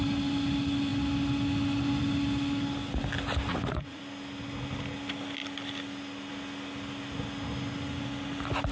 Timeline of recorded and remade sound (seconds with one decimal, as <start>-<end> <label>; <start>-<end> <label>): 0.0-3.5 recorded; 3.5-4.0 remade; 4.0-8.7 recorded